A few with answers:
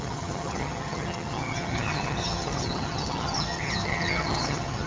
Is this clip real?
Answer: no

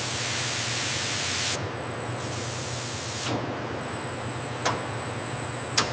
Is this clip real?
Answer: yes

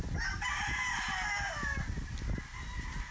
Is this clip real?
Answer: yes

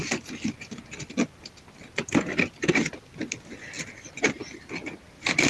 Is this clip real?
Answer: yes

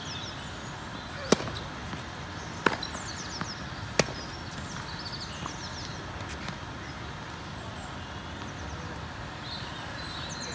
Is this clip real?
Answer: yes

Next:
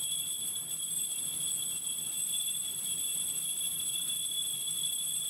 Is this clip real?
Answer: yes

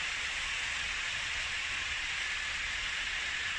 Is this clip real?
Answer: no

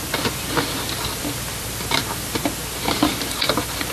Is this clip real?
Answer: yes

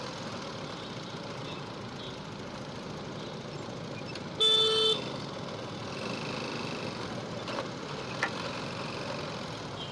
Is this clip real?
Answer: yes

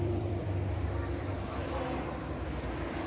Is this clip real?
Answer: no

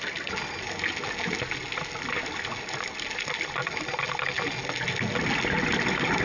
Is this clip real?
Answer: yes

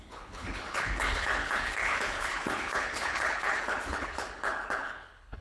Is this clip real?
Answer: no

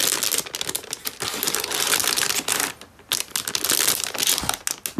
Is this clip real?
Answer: yes